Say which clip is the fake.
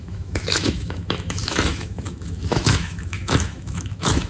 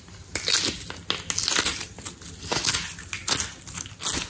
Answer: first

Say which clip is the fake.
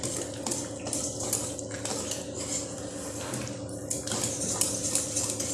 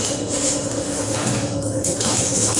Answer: second